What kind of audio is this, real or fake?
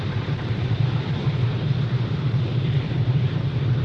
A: fake